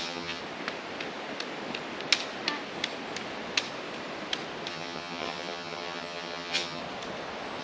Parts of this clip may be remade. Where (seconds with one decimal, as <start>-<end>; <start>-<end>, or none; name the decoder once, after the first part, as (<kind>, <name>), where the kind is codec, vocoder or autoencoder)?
0.0-0.4 (vocoder, HiFi-GAN); 4.7-6.8